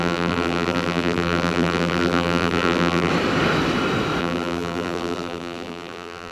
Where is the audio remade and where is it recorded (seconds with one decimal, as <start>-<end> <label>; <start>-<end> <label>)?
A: 0.0-3.1 remade; 3.1-4.2 recorded; 4.2-6.3 remade